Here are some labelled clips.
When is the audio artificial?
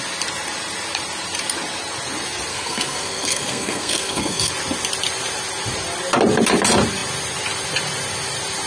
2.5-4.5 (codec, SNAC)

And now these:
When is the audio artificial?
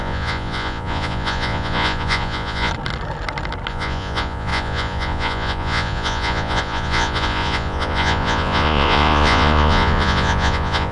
0.0-2.7 (vocoder, Vocos); 3.7-10.9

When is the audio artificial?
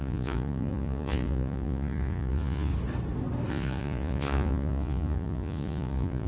0.0-2.7 (vocoder, Vocos); 3.5-6.3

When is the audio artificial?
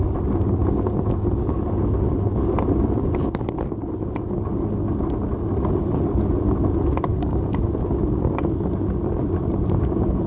7.1-7.7 (codec, DAC)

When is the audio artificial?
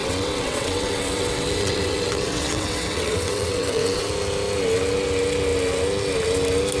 0.0-4.1 (vocoder, WaveNeXt)